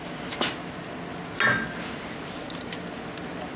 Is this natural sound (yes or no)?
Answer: yes